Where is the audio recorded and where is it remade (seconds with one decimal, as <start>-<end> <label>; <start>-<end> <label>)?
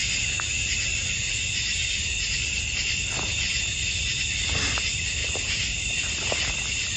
0.0-5.2 recorded; 5.2-6.1 remade; 6.1-7.0 recorded